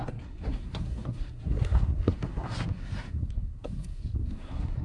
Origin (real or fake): fake